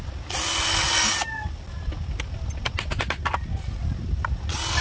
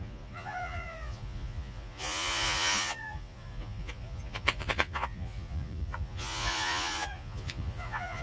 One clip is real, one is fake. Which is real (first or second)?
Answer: first